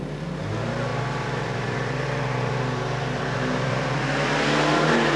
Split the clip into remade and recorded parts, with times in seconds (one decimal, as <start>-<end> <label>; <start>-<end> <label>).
0.0-0.9 recorded; 0.9-4.0 remade; 4.0-5.2 recorded